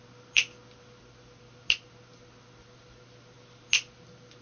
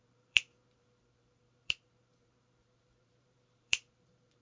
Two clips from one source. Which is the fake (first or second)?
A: second